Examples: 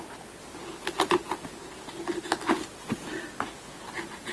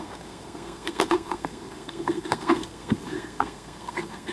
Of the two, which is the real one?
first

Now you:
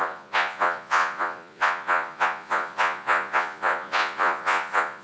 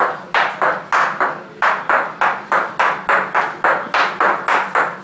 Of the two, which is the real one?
second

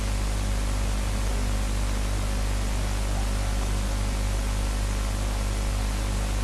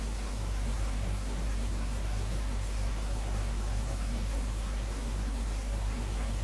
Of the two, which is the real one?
first